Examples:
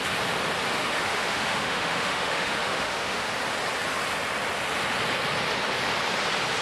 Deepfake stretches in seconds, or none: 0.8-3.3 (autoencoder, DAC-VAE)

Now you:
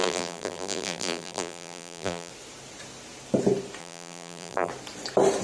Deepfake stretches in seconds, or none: 0.0-2.3 (vocoder, BigVGAN v2); 3.8-4.7

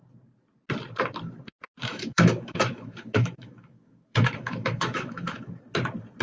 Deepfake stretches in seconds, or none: 1.8-5.5 (autoencoder, DAC-VAE)

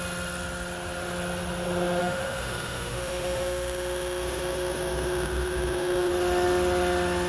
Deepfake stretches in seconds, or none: 2.0-6.1 (autoencoder, DAC-VAE)

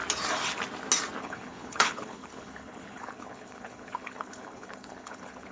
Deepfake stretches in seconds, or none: 1.2-5.5 (codec, HILCodec)

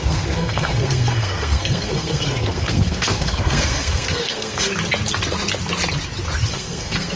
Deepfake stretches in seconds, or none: 0.0-4.7 (codec, SNAC); 6.5-7.2

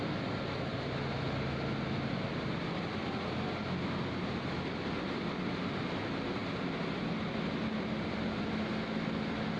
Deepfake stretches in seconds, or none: none